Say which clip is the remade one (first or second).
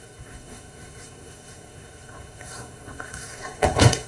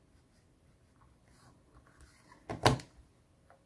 first